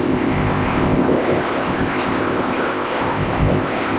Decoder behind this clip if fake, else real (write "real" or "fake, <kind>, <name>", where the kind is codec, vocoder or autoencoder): fake, codec, ZipCodec